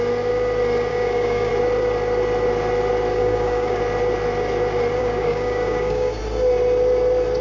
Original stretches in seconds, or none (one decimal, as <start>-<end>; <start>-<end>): 0.0-0.9; 1.5-3.1; 3.8-5.0; 6.2-7.4